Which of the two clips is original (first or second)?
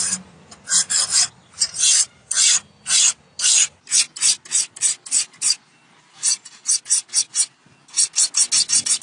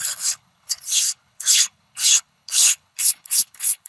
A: first